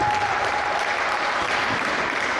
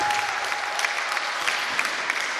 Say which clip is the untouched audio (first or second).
second